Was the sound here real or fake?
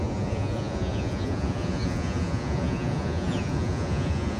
fake